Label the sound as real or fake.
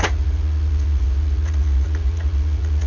fake